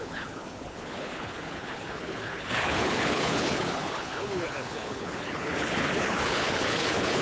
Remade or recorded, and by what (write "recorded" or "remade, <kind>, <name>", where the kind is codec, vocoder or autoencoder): remade, codec, HILCodec